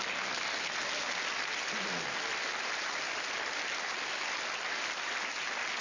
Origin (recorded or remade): recorded